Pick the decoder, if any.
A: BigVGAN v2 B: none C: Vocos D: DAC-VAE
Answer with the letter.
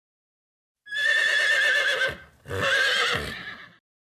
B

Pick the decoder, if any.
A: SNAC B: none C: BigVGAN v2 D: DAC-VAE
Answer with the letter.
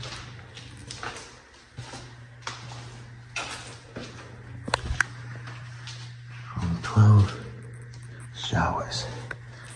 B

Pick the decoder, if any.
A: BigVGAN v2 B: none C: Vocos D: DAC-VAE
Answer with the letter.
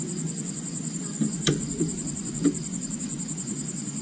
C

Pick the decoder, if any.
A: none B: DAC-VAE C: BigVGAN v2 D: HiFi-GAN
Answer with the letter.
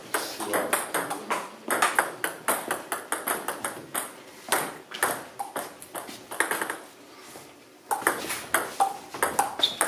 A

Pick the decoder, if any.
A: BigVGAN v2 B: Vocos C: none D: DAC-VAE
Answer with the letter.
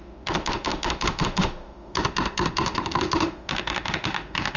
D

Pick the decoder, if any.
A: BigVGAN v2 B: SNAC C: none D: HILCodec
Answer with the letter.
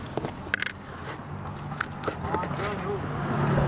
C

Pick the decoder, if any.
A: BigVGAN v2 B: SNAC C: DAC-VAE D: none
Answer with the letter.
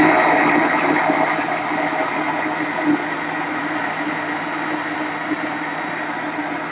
D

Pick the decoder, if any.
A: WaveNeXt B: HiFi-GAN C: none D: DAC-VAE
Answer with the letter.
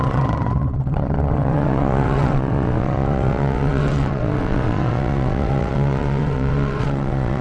A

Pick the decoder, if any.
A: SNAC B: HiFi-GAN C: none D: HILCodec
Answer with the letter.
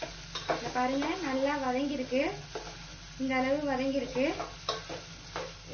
C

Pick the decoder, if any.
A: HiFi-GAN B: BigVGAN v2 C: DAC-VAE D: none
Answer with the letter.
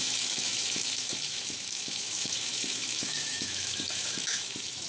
C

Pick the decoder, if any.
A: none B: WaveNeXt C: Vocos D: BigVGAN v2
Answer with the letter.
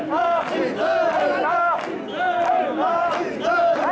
A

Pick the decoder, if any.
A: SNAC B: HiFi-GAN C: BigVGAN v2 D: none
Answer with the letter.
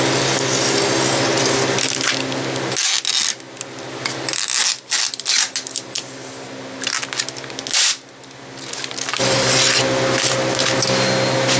D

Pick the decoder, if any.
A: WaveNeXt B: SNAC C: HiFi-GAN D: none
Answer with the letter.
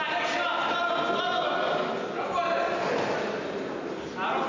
D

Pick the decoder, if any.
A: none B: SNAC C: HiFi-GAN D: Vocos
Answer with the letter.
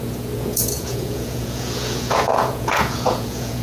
D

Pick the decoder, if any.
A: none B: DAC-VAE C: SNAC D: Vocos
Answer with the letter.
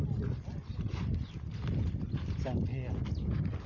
A